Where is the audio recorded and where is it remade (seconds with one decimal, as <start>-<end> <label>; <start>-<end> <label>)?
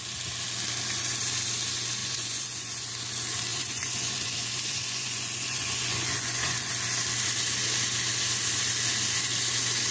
0.0-2.0 recorded; 2.0-2.9 remade; 2.9-3.5 recorded; 3.5-6.7 remade; 6.7-9.9 recorded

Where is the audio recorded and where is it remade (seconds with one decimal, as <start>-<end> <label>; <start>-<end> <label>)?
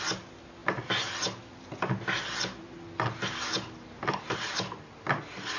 0.0-5.6 recorded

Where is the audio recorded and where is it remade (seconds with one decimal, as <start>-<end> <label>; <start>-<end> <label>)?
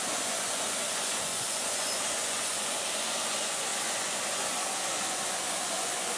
0.0-6.2 remade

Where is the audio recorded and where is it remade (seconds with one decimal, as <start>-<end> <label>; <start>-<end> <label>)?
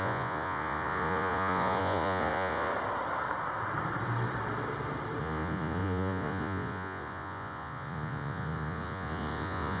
0.0-2.7 remade; 2.7-5.2 recorded; 5.2-9.8 remade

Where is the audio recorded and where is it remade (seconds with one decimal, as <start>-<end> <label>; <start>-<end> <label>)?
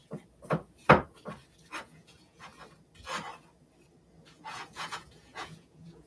0.0-1.8 recorded; 1.8-2.5 remade; 2.5-4.2 recorded; 4.2-6.1 remade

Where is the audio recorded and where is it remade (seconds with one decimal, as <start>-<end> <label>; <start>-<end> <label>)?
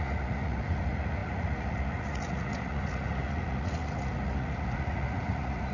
0.0-5.7 remade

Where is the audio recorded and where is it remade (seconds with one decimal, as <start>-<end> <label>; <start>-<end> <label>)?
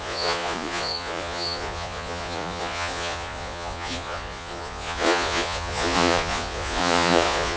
0.0-7.6 remade